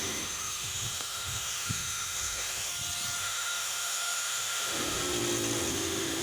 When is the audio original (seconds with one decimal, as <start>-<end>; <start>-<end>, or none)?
2.7-3.2; 5.0-5.7